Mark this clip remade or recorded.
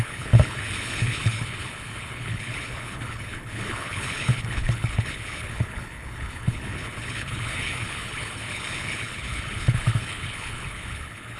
remade